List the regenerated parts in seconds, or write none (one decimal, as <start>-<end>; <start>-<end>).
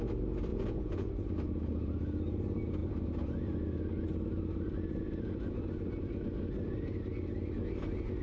0.5-1.1